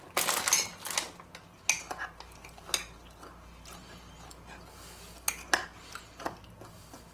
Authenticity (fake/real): real